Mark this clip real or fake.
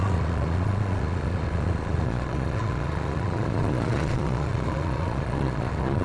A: fake